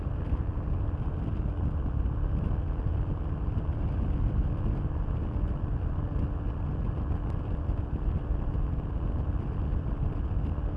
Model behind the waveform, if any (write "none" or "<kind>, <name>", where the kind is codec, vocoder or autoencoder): none